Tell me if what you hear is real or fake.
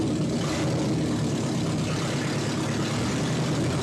real